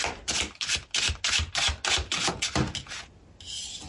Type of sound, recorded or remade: recorded